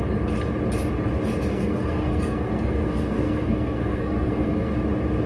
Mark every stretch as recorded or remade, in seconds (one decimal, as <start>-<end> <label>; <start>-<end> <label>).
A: 0.0-1.5 recorded; 1.5-4.7 remade; 4.7-5.3 recorded